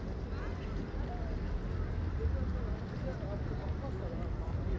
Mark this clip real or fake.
real